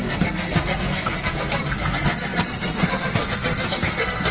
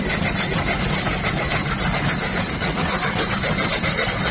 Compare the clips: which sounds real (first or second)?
second